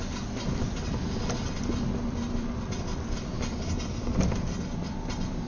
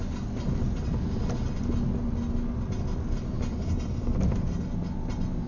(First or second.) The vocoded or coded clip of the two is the first